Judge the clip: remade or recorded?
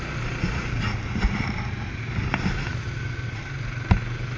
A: recorded